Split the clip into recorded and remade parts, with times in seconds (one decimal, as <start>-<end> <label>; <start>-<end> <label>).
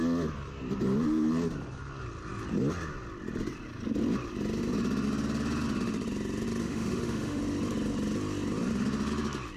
0.0-6.6 recorded; 6.6-7.4 remade; 7.4-9.6 recorded